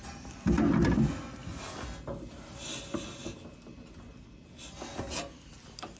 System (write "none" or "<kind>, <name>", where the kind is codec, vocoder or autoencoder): none